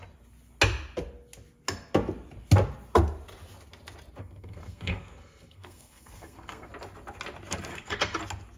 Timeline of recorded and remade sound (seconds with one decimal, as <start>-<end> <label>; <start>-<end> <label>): 0.0-4.2 recorded; 4.2-6.7 remade; 6.7-7.7 recorded; 7.7-8.2 remade; 8.2-8.6 recorded